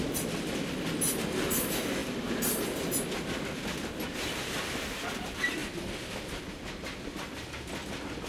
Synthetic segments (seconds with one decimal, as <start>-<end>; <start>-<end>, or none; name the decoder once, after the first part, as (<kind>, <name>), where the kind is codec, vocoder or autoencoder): none